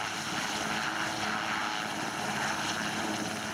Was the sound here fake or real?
real